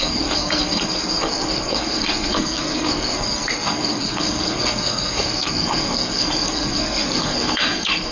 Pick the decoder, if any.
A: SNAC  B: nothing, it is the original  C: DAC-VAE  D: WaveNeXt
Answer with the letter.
A